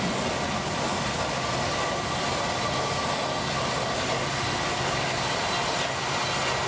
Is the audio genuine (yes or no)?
yes